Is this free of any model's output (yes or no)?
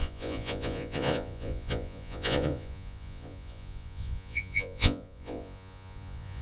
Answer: no